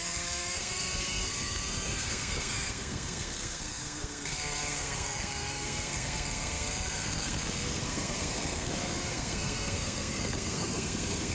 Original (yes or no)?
no